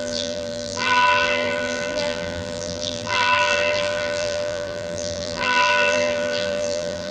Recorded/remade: remade